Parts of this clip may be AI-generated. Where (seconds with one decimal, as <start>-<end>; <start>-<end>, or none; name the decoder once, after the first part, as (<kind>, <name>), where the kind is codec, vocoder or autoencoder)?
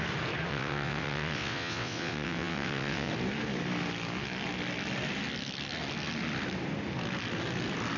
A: 0.5-3.1 (vocoder, WaveNeXt)